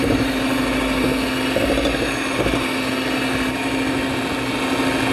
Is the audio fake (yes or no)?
no